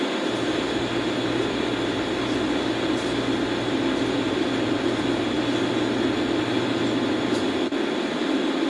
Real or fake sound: real